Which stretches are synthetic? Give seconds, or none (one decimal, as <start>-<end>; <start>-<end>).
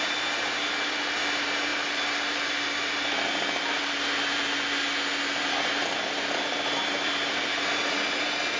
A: none